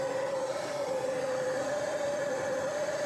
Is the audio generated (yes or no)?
no